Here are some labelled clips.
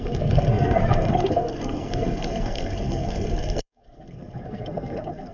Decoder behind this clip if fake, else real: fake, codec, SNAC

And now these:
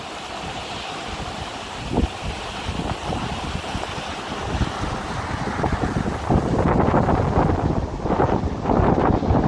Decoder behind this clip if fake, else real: real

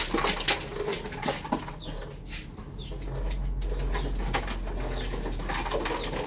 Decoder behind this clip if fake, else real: real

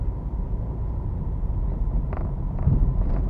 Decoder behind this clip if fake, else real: real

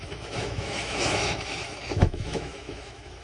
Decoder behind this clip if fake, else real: fake, autoencoder, DAC-VAE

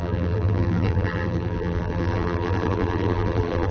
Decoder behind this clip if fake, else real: fake, vocoder, BigVGAN v2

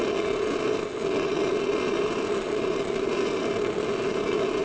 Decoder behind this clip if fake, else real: real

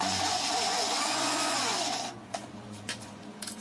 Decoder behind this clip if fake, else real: fake, vocoder, Vocos